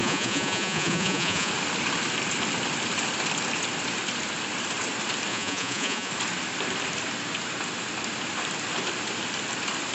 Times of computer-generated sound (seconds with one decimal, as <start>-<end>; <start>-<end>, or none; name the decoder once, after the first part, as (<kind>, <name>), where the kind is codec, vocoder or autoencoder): 0.0-1.5 (vocoder, Vocos); 5.3-6.1